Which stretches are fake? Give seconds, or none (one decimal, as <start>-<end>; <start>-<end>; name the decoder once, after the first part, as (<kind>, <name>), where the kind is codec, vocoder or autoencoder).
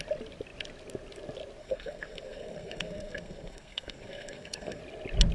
1.6-4.8 (codec, SNAC)